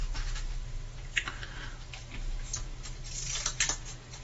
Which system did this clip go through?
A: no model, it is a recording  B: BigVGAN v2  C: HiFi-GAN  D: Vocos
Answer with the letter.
A